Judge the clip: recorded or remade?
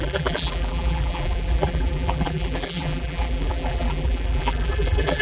remade